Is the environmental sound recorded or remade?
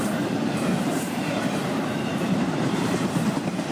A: remade